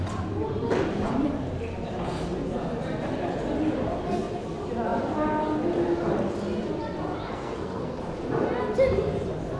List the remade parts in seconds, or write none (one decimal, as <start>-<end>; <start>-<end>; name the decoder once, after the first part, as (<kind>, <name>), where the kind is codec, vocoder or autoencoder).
7.3-8.0 (codec, SNAC)